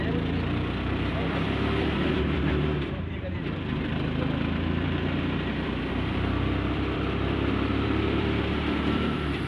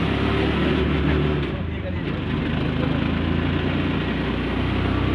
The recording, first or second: second